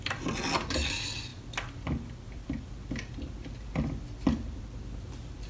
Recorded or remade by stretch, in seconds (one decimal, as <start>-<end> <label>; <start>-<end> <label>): 0.0-5.5 recorded

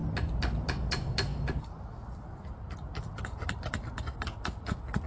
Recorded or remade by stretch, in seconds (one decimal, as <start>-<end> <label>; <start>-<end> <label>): 0.0-5.1 recorded

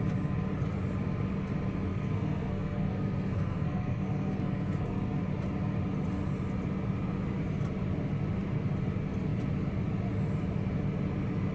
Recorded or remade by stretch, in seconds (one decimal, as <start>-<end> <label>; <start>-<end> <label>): 0.0-1.9 recorded; 1.9-5.0 remade; 5.0-11.5 recorded

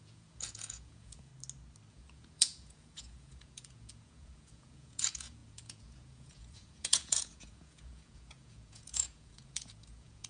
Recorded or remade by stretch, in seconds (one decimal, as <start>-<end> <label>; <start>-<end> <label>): 0.0-1.3 remade; 1.3-1.9 recorded; 1.9-10.3 remade

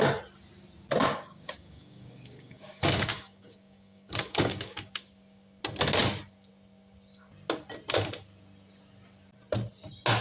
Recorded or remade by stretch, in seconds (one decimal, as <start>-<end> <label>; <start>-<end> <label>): 0.0-1.1 recorded; 1.1-4.9 remade; 4.9-10.2 recorded